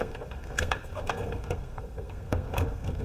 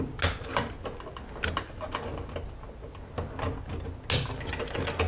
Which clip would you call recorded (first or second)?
second